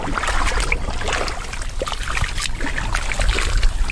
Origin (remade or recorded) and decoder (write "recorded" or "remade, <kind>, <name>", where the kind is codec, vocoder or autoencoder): recorded